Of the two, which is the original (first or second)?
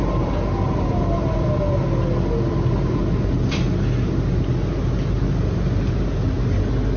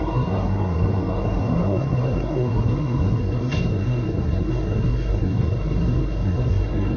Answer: first